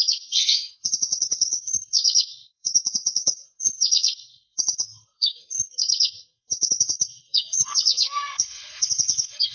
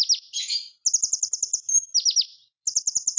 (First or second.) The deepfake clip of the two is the first